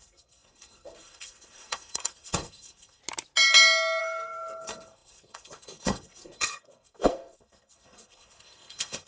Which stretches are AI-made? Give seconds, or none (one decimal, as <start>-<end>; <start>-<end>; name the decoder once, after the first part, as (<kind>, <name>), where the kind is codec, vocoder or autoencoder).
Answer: 0.0-3.0 (codec, SNAC); 4.0-9.1